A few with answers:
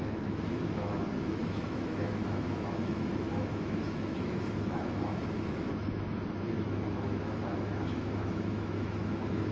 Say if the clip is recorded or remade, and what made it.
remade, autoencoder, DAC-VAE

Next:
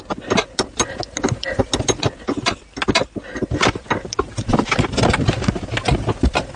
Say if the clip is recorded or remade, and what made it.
recorded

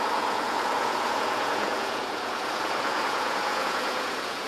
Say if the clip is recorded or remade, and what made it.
remade, vocoder, Vocos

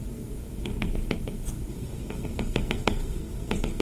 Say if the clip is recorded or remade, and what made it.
remade, codec, SNAC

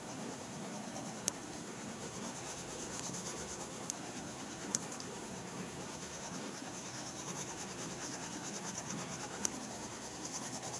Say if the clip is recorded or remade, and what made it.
remade, codec, SNAC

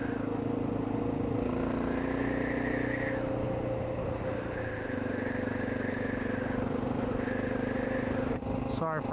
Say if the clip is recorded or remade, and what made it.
recorded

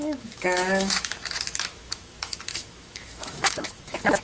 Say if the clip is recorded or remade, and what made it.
remade, autoencoder, DAC-VAE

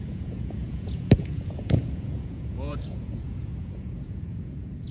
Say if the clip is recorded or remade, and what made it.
remade, vocoder, Vocos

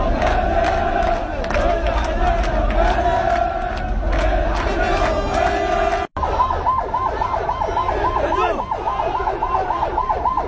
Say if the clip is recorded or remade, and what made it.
recorded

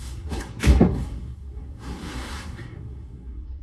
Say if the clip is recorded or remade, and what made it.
remade, codec, SNAC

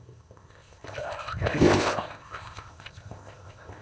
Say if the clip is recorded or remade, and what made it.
remade, codec, ZipCodec